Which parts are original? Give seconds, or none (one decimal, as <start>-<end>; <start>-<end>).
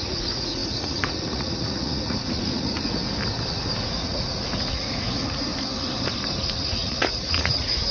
3.0-3.5; 5.5-6.4